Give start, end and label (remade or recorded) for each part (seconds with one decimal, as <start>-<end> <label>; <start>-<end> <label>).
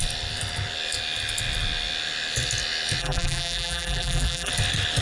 0.0-3.0 recorded; 3.0-4.5 remade; 4.5-5.0 recorded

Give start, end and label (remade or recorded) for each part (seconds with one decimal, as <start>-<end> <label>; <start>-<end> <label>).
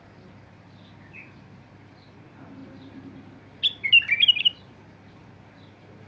0.0-6.1 recorded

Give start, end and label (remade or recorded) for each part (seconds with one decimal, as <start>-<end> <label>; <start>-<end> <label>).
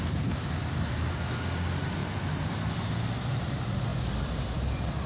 0.0-2.0 recorded; 2.0-2.5 remade; 2.5-3.9 recorded; 3.9-5.1 remade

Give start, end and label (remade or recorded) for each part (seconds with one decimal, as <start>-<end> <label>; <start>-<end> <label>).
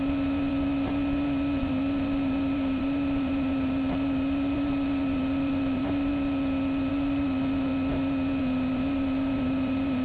0.0-1.0 remade; 1.0-1.6 recorded; 1.6-6.1 remade; 6.1-6.9 recorded; 6.9-7.7 remade; 7.7-8.4 recorded; 8.4-10.0 remade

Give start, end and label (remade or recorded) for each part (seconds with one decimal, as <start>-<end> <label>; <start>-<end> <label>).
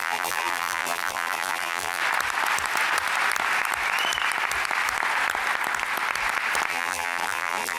0.0-2.0 remade; 2.0-6.7 recorded; 6.7-7.8 remade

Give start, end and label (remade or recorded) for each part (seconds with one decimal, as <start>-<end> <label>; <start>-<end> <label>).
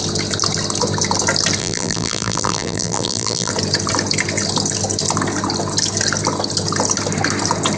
0.0-1.6 recorded; 1.6-3.5 remade; 3.5-7.8 recorded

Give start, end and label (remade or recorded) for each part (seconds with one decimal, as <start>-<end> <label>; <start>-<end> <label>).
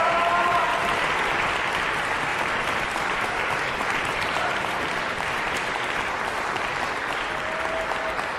0.0-0.7 recorded; 0.7-1.5 remade; 1.5-2.3 recorded; 2.3-6.0 remade; 6.0-8.4 recorded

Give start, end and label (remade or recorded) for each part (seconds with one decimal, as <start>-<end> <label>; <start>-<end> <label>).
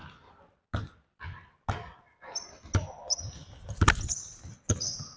0.0-5.2 recorded